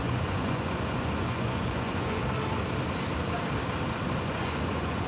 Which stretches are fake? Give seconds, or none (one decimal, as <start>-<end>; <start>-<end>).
0.0-2.2; 4.2-5.1